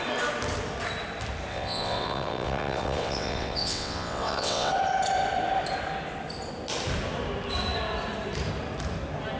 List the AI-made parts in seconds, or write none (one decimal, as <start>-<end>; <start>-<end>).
1.5-4.7

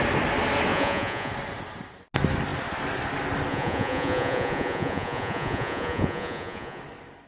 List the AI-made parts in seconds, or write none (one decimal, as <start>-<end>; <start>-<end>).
0.7-1.3; 3.5-6.8